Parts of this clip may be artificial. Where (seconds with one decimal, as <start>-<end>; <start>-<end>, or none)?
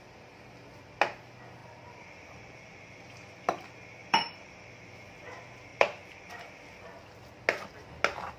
1.6-2.9; 4.0-4.7; 5.7-6.3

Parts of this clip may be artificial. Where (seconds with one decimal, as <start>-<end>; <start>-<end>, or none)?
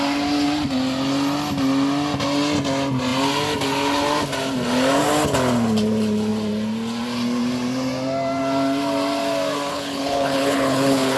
9.7-11.2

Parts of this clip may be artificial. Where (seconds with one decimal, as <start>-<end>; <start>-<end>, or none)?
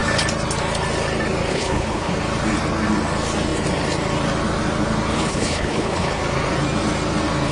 1.5-2.1; 5.1-6.2